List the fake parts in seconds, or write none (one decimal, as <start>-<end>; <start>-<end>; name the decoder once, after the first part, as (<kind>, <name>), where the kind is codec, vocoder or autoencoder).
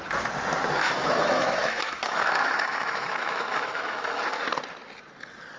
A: 0.8-4.2 (autoencoder, DAC-VAE)